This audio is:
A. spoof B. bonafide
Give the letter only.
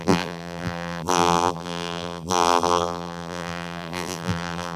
A